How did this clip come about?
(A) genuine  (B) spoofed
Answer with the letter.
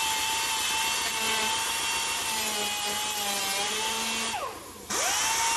A